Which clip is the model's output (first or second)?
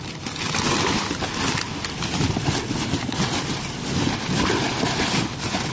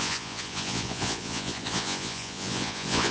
second